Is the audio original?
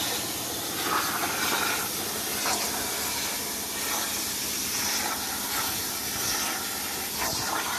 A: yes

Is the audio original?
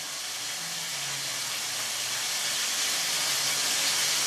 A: yes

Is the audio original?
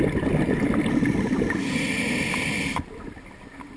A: yes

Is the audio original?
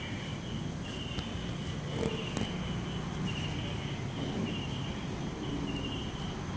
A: yes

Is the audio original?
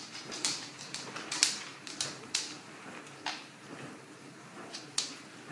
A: no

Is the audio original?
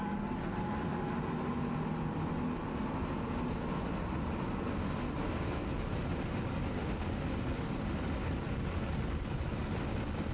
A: yes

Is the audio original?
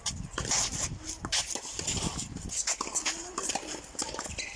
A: yes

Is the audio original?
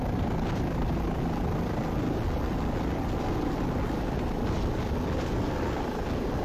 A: yes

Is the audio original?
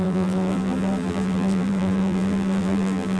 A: no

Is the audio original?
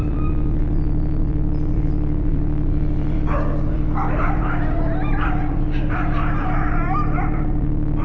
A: no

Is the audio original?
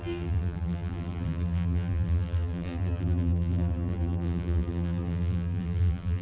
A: no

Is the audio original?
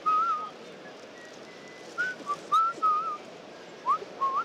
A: yes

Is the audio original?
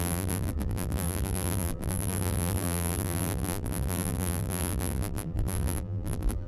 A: no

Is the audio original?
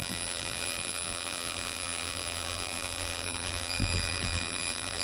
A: no